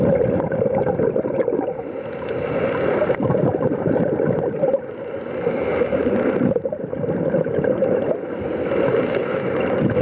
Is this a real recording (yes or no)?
yes